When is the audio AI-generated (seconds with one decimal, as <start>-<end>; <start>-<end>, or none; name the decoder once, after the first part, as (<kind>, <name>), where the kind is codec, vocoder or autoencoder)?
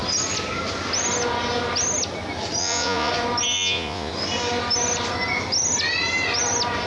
2.6-3.1 (vocoder, Vocos); 3.5-4.1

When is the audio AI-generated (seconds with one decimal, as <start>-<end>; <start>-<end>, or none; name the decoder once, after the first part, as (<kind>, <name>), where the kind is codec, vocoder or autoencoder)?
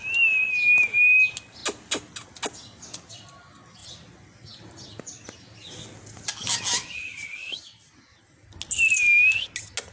none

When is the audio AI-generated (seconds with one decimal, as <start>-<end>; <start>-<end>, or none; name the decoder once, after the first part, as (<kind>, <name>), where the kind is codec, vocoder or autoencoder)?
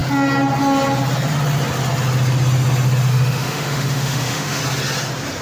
3.1-4.6 (autoencoder, DAC-VAE)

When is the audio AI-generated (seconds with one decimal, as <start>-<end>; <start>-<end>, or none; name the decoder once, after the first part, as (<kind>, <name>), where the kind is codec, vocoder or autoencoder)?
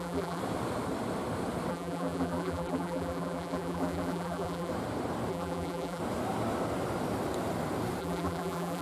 0.0-0.4 (vocoder, BigVGAN v2); 1.7-4.7; 5.3-6.0; 8.0-8.8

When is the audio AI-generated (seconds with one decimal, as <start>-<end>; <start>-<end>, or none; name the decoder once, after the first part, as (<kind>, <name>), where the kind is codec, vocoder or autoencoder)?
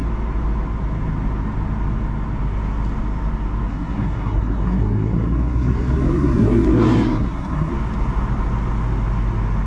3.7-7.7 (codec, SNAC)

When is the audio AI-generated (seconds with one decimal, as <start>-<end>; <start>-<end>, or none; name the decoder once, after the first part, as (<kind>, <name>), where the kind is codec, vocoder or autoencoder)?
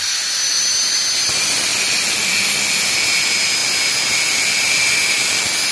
none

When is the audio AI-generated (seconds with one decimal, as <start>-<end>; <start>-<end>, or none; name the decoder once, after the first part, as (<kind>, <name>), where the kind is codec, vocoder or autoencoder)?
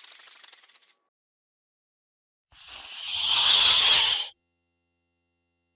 3.0-5.8 (vocoder, HiFi-GAN)